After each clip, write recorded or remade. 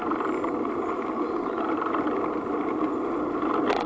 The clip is recorded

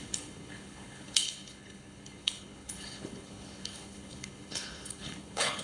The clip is remade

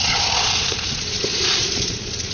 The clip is remade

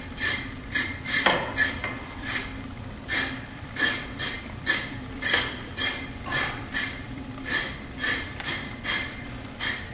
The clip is remade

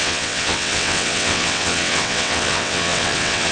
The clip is remade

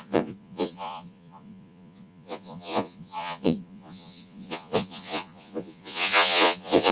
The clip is remade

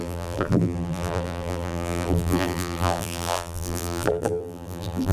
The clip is remade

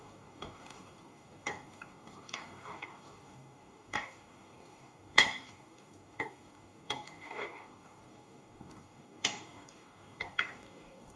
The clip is remade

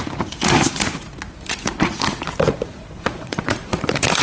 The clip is remade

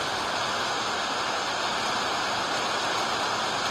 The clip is recorded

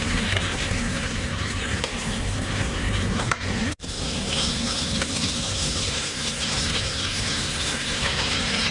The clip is remade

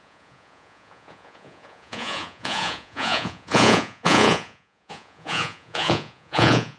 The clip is remade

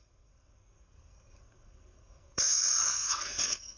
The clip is remade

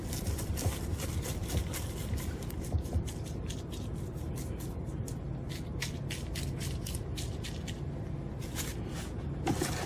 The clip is recorded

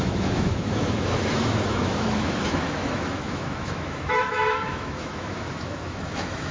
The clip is remade